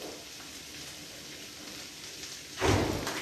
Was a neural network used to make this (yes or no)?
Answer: no